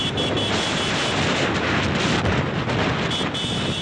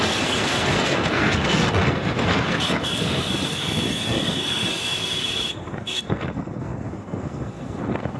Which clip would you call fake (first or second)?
second